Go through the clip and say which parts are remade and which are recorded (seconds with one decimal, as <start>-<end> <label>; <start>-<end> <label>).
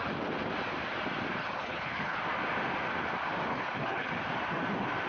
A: 0.0-1.4 recorded; 1.4-2.2 remade; 2.2-3.5 recorded; 3.5-4.1 remade; 4.1-5.1 recorded